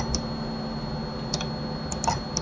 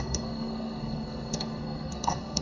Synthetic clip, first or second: second